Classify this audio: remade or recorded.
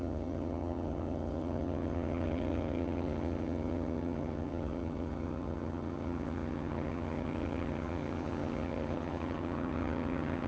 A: remade